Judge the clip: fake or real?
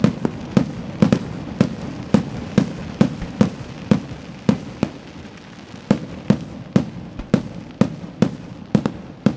real